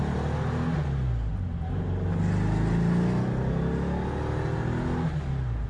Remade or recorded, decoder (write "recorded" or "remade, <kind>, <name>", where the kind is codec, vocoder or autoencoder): recorded